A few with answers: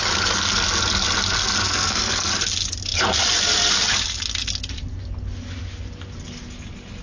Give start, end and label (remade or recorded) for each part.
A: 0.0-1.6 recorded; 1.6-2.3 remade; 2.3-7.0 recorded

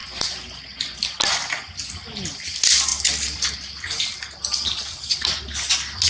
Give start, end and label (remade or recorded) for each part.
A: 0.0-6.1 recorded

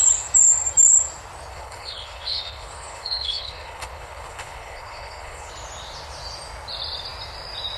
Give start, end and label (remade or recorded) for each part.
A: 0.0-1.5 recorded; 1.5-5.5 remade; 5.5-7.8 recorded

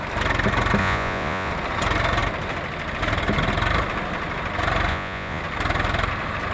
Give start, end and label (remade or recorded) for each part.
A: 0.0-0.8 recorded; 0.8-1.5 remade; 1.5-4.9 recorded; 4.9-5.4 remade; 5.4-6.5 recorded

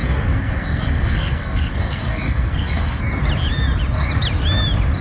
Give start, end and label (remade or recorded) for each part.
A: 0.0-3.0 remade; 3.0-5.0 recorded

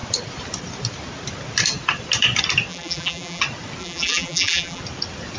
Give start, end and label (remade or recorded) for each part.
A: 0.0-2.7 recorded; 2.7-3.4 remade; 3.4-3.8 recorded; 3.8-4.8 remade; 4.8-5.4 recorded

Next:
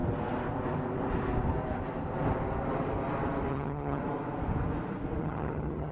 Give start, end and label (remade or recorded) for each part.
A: 0.0-3.5 recorded; 3.5-4.0 remade; 4.0-5.2 recorded; 5.2-5.9 remade

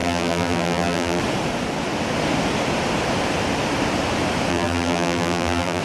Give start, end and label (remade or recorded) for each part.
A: 0.0-1.2 remade; 1.2-4.5 recorded; 4.5-5.8 remade